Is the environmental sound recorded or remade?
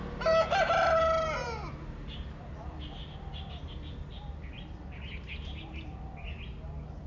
recorded